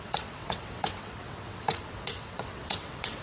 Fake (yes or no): yes